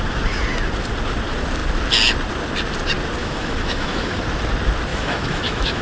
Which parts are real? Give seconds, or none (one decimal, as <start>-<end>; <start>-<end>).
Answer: 0.0-3.2; 4.2-4.9